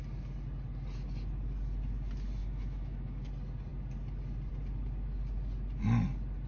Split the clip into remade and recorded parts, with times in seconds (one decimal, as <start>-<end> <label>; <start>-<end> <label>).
0.0-2.4 recorded; 2.4-3.3 remade; 3.3-6.5 recorded